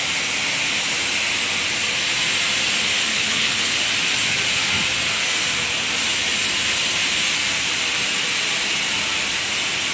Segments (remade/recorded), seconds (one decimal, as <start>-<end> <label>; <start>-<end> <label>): 0.0-3.1 recorded; 3.1-3.8 remade; 3.8-9.9 recorded